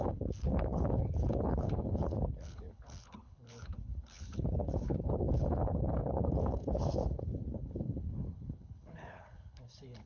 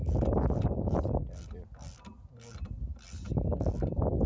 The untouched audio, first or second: second